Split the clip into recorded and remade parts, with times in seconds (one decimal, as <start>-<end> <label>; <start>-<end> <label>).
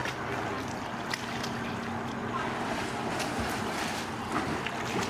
0.0-5.1 recorded